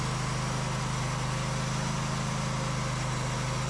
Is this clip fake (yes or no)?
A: no